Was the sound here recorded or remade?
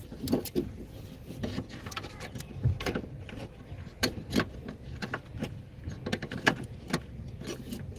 recorded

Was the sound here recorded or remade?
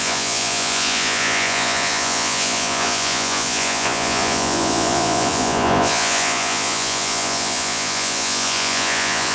remade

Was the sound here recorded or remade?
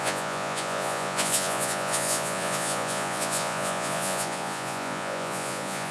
remade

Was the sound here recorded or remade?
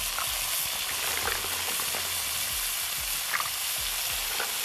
recorded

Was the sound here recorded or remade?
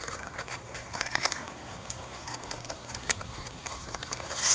remade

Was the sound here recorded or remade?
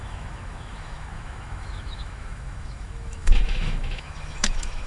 remade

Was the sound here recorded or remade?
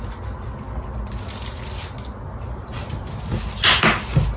recorded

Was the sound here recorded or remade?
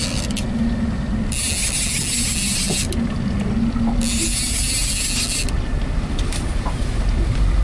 recorded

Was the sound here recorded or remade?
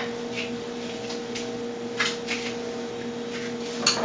recorded